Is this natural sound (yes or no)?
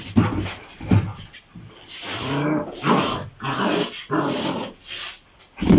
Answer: yes